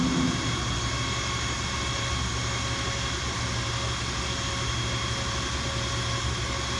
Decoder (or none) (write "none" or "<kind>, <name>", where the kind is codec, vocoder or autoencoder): none